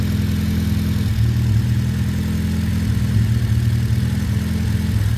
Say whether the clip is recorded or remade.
recorded